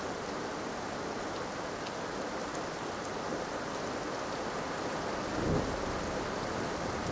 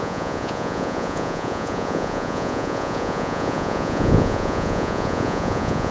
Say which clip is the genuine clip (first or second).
first